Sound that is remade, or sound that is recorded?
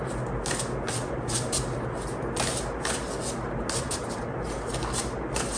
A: recorded